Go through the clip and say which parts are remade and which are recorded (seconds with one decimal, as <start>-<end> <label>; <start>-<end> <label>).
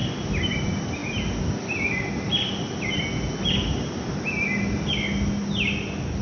0.0-6.2 recorded